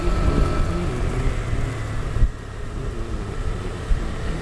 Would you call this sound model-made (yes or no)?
no